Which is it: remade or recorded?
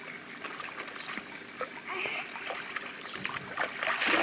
recorded